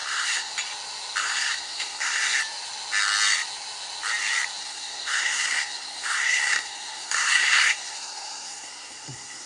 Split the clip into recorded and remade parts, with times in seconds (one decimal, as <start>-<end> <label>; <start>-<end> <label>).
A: 0.0-0.5 remade; 0.5-1.2 recorded; 1.2-2.4 remade; 2.4-4.6 recorded; 4.6-9.5 remade